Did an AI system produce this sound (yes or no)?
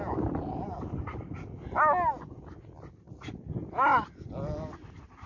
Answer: no